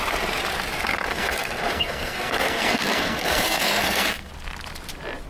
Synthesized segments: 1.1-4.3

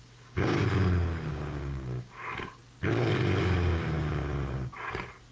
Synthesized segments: 0.0-0.6; 1.3-2.6; 3.4-4.2

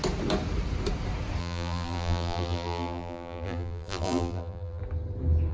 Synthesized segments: 1.4-4.8

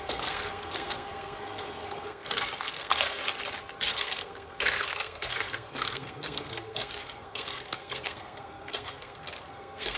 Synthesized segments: 0.0-3.2; 3.9-10.0

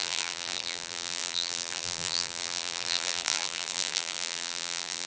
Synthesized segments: 0.0-5.1